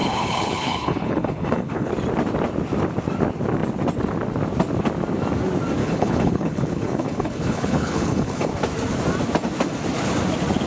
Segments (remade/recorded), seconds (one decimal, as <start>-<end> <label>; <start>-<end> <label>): 0.0-1.9 remade; 1.9-5.8 recorded; 5.8-8.5 remade; 8.5-10.7 recorded